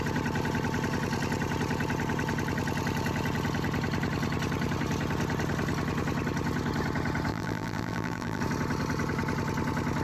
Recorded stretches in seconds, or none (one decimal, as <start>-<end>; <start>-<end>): 0.0-7.3; 8.4-10.0